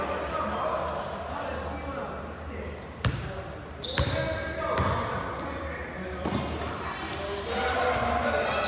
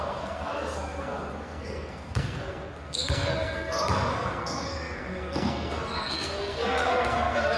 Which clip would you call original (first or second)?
first